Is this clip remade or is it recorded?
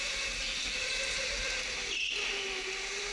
recorded